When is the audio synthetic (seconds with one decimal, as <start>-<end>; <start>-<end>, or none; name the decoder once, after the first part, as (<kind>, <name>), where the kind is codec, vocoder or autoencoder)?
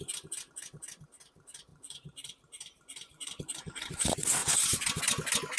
1.7-3.9 (vocoder, BigVGAN v2); 4.4-5.0